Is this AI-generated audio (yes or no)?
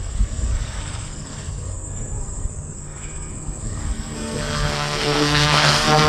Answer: yes